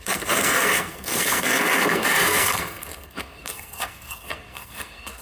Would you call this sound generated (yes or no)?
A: yes